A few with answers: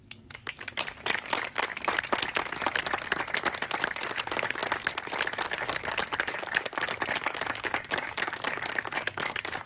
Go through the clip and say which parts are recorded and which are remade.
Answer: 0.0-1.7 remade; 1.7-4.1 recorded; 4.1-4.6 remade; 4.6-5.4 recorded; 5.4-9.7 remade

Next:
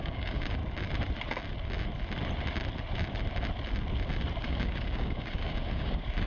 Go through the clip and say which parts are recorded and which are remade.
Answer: 0.0-0.6 remade; 0.6-4.4 recorded; 4.4-6.3 remade

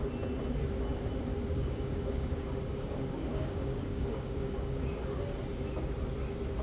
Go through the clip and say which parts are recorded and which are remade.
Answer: 0.0-1.3 recorded; 1.3-5.0 remade; 5.0-6.6 recorded